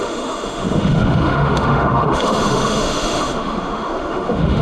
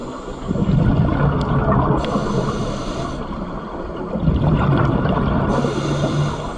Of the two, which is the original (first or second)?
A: second